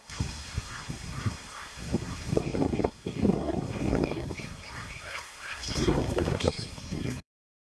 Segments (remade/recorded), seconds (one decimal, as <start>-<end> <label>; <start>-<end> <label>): 0.0-7.8 remade